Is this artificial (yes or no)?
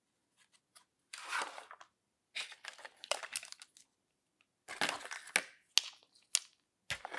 no